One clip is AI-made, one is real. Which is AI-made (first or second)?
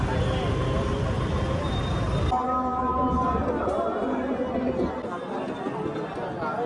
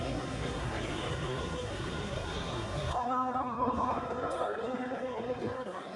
second